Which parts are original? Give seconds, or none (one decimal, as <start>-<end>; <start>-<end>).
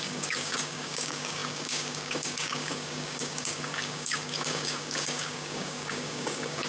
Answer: none